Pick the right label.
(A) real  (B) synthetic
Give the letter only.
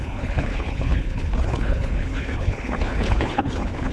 B